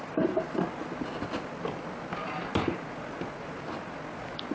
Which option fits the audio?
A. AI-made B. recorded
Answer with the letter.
B